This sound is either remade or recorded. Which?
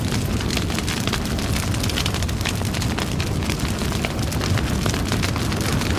recorded